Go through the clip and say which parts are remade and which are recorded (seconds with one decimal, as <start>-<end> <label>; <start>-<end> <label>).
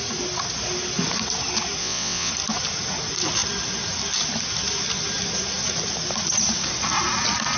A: 0.0-1.8 recorded; 1.8-2.3 remade; 2.3-7.6 recorded